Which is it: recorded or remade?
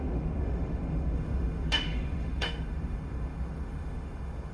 remade